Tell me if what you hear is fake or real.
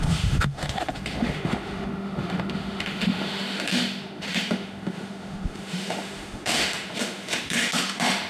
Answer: fake